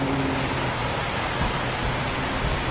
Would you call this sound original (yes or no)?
yes